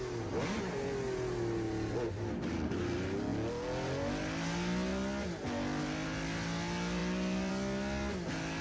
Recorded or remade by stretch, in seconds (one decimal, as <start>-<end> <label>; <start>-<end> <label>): 0.0-8.6 recorded